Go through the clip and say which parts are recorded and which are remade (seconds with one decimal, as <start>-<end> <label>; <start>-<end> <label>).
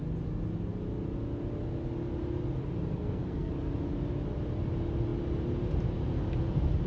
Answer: 0.0-2.9 recorded; 2.9-3.5 remade; 3.5-6.9 recorded